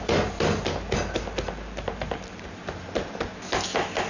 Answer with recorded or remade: recorded